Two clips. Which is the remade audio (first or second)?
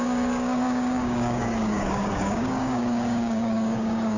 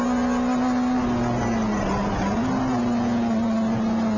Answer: first